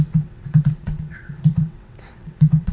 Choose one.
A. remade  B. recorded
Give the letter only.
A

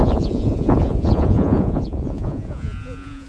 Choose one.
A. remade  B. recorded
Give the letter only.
A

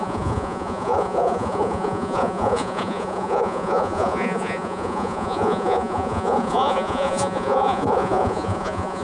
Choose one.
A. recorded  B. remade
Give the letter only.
B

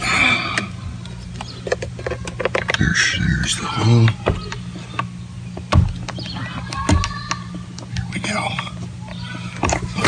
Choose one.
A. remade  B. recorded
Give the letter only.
B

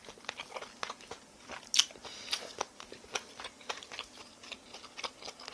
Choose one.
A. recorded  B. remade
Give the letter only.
A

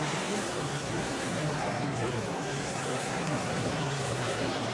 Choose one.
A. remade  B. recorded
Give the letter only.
A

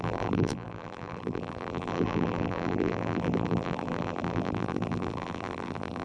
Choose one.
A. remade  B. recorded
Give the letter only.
A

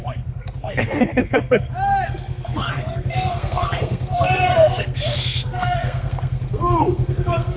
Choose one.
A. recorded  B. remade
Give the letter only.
B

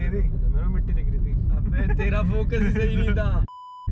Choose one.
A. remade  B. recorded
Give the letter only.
B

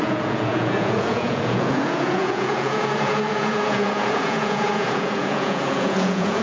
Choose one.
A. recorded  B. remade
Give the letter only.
B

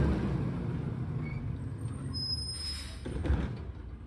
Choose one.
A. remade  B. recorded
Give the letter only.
B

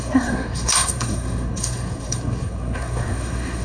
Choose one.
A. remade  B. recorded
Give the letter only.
A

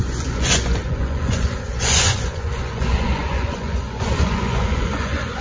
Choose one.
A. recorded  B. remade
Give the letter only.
B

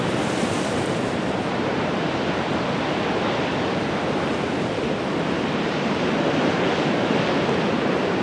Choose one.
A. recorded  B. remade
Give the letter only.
B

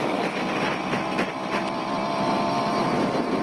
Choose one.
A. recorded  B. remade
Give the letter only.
A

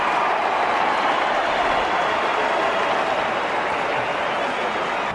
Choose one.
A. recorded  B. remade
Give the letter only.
A